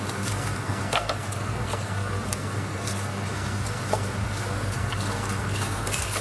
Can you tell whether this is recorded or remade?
remade